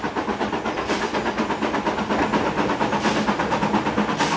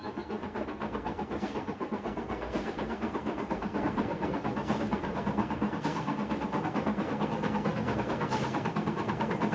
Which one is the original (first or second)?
first